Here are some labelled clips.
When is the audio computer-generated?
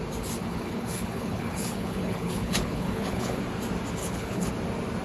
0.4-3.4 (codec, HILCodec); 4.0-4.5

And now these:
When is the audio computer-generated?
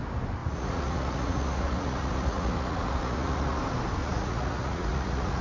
0.4-3.6 (vocoder, Vocos); 4.0-5.4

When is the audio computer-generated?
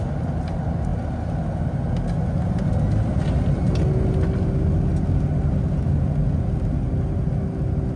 none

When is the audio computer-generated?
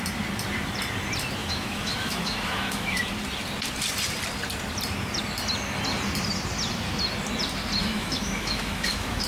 1.4-3.0 (autoencoder, DAC-VAE); 7.8-9.3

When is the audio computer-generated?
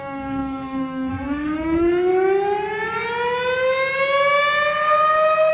0.0-2.1 (codec, SNAC)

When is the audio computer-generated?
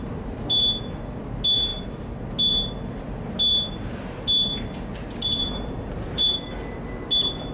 1.7-2.2 (vocoder, BigVGAN v2); 5.4-6.2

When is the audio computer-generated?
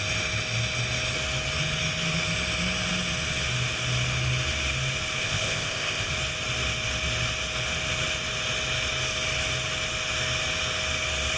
5.2-6.1 (codec, ZipCodec)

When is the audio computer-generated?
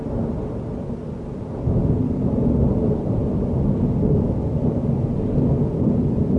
none